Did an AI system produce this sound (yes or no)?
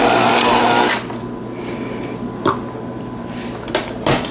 no